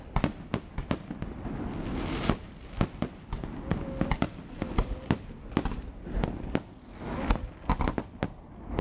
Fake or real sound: real